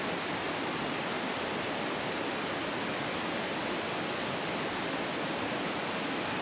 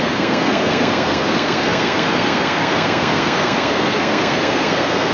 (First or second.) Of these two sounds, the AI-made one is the second